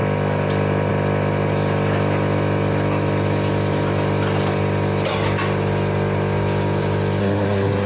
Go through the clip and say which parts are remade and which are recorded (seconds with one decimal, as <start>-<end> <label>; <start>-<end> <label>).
0.0-7.2 recorded; 7.2-7.9 remade